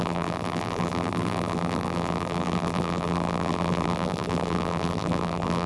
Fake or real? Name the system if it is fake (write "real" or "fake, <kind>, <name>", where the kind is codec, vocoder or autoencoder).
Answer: fake, vocoder, BigVGAN v2